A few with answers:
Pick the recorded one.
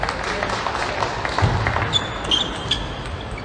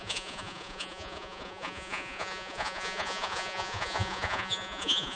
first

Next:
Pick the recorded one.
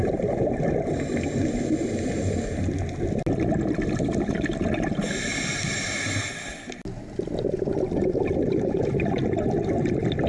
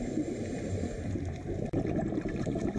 first